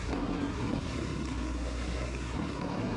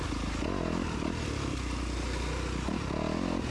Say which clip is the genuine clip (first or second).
second